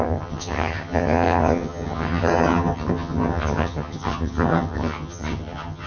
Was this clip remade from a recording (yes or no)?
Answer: yes